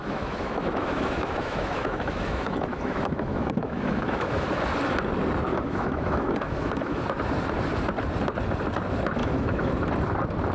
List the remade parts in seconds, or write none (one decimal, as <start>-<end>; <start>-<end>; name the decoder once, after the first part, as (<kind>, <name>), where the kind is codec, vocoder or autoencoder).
0.0-4.6 (autoencoder, DAC-VAE); 5.5-7.0; 9.2-9.7